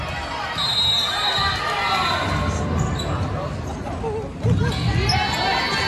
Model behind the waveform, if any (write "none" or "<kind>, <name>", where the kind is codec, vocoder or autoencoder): none